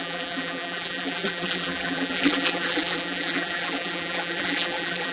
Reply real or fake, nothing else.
fake